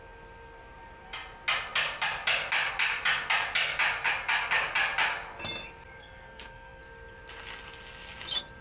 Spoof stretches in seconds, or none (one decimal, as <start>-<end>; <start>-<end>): 6.0-6.8